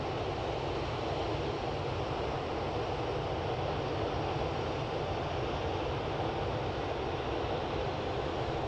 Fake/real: real